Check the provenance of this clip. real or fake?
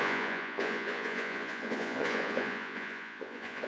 fake